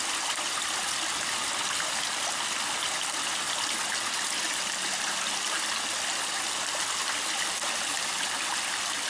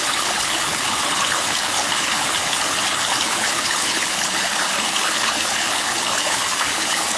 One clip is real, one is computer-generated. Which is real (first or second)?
first